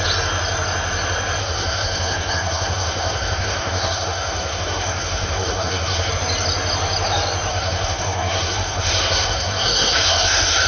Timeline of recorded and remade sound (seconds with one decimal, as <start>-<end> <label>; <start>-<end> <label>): 0.0-1.4 recorded; 1.4-6.1 remade; 6.1-7.5 recorded; 7.5-10.7 remade